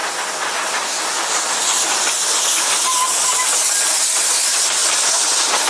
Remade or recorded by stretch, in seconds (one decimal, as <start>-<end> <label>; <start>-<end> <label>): 0.0-1.3 remade; 1.3-5.7 recorded